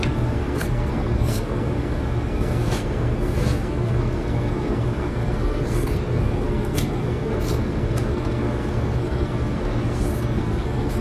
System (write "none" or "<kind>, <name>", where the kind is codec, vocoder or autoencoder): codec, SNAC